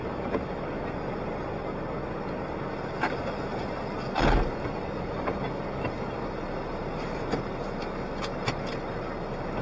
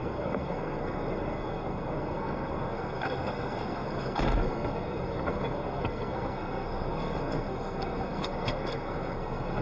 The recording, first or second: first